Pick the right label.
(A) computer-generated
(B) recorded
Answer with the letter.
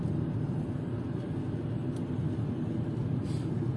B